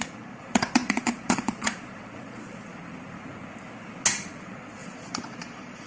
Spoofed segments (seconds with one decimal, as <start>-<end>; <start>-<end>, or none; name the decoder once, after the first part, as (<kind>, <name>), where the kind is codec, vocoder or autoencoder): 0.0-2.7 (vocoder, Vocos); 4.3-5.9